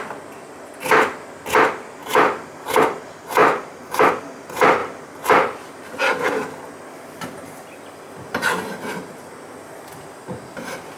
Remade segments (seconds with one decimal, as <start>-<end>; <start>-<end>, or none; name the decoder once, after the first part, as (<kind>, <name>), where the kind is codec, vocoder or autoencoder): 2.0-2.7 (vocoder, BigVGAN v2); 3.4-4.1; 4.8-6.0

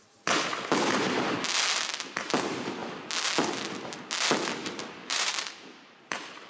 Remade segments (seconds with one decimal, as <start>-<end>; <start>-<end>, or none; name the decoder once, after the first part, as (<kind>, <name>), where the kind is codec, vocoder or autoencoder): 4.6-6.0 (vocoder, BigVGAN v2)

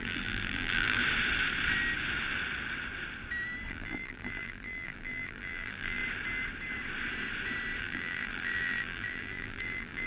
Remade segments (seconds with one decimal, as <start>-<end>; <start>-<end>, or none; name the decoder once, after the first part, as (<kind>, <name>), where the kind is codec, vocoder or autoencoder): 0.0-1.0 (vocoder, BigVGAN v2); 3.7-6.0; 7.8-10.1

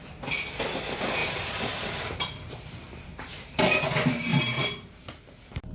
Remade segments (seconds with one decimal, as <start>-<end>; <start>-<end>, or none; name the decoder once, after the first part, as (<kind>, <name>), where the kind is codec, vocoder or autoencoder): 1.2-3.6 (vocoder, BigVGAN v2); 4.3-5.0

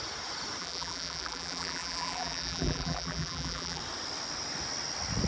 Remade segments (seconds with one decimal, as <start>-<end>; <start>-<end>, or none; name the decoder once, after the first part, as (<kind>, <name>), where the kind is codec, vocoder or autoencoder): 0.6-3.8 (vocoder, BigVGAN v2)

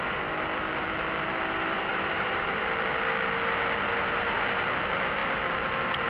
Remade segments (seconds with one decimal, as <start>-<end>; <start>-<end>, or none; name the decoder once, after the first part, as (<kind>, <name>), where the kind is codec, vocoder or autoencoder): 1.9-2.6 (vocoder, BigVGAN v2)

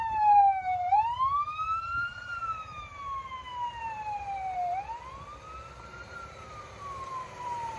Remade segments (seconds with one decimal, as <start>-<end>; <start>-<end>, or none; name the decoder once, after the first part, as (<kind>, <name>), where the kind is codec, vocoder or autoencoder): 0.0-2.3 (vocoder, BigVGAN v2); 3.8-4.7; 5.8-7.8

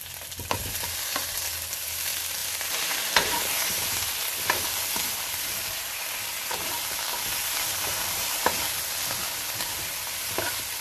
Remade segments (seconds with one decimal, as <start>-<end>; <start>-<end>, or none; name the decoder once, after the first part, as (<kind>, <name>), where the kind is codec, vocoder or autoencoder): 2.4-4.1 (vocoder, BigVGAN v2); 7.9-8.5